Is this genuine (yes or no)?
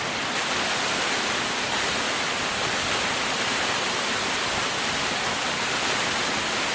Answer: yes